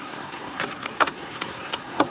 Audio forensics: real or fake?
fake